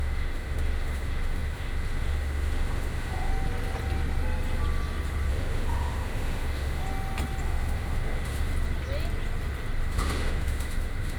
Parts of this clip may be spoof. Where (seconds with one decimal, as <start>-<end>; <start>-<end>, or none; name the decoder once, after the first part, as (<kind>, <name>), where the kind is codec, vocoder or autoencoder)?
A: 0.0-3.3 (autoencoder, DAC-VAE); 5.3-6.8; 7.4-8.5; 9.8-11.2